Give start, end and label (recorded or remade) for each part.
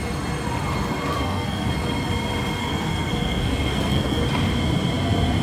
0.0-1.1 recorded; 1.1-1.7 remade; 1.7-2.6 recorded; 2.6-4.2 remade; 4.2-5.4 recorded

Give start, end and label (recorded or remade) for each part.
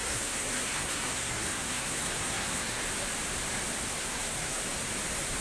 0.0-2.8 remade; 2.8-4.0 recorded; 4.0-4.6 remade; 4.6-5.4 recorded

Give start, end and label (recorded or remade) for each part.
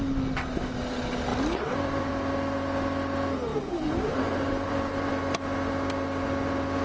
0.0-1.3 recorded; 1.3-2.1 remade; 2.1-3.5 recorded; 3.5-5.1 remade; 5.1-6.8 recorded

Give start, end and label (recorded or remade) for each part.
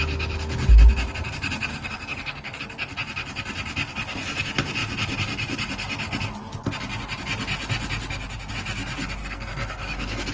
0.0-1.7 recorded; 1.7-2.6 remade; 2.6-9.2 recorded; 9.2-10.3 remade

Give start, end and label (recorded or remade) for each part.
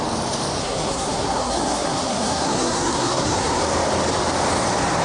0.0-0.6 recorded; 0.6-3.6 remade; 3.6-5.0 recorded